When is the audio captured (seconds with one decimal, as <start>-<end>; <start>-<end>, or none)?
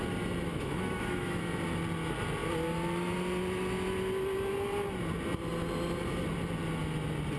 0.0-0.5; 1.4-7.4